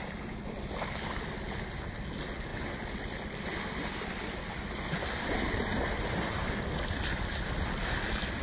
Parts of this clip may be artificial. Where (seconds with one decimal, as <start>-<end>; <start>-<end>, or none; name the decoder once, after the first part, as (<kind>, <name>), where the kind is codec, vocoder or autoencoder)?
none

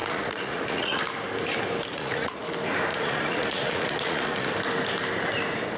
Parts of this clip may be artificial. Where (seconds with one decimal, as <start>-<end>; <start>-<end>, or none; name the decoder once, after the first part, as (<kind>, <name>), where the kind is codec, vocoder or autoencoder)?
0.0-1.0 (vocoder, Vocos); 1.9-2.4; 2.9-4.5

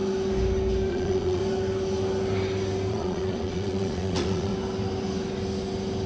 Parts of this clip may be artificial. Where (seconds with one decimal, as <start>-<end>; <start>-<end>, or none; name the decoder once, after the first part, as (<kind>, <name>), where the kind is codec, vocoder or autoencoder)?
0.9-1.4 (vocoder, Vocos); 2.9-4.5

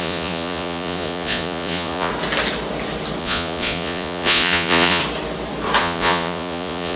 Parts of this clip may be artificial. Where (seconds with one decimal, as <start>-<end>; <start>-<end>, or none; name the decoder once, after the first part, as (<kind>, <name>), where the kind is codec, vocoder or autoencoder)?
0.0-2.1 (vocoder, Vocos); 3.2-5.0; 5.8-7.0